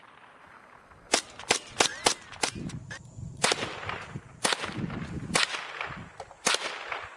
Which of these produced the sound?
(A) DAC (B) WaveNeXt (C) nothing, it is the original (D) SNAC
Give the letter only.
C